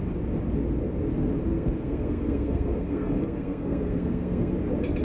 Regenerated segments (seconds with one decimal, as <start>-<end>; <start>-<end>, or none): 1.5-4.5